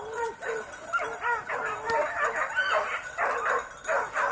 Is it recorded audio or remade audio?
recorded